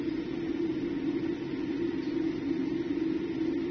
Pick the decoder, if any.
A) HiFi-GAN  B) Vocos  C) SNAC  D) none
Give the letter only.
D